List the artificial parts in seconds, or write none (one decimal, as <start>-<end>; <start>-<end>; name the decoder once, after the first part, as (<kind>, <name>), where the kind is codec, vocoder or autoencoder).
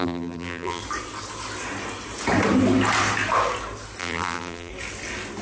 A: 0.0-0.8 (vocoder, BigVGAN v2); 4.0-4.7